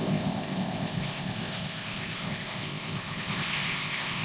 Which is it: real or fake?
fake